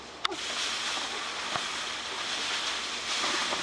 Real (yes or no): yes